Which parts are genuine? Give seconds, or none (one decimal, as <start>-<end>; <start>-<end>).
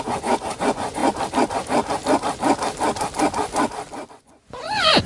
1.0-4.1